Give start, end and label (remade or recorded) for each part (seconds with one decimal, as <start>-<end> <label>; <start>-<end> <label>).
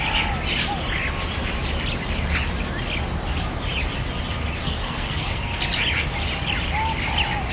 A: 0.0-4.6 recorded; 4.6-5.6 remade; 5.6-7.5 recorded